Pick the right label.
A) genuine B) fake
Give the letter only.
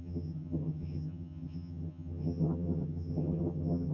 B